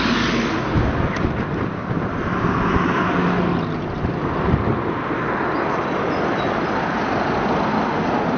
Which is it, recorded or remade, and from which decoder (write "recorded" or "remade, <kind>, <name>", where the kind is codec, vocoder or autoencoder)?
recorded